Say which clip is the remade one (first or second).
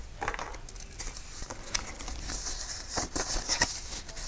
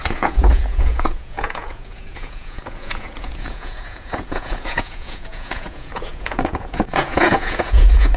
second